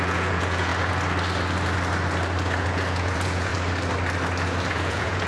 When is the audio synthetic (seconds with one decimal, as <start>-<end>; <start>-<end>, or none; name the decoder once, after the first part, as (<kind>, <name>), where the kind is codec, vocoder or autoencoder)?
0.0-0.7 (vocoder, Vocos); 2.6-3.5; 4.7-5.3